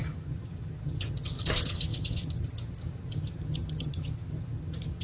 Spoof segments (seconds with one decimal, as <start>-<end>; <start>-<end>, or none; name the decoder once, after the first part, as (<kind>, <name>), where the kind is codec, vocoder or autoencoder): 0.0-5.0 (vocoder, HiFi-GAN)